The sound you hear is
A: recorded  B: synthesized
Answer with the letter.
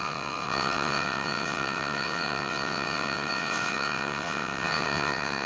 B